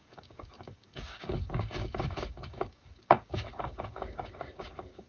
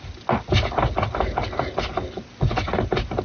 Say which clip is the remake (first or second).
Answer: first